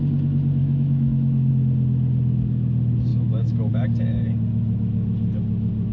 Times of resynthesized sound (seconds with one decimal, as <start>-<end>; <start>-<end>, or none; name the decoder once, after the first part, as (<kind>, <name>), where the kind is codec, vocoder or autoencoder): 0.6-1.5 (autoencoder, DAC-VAE); 3.1-3.7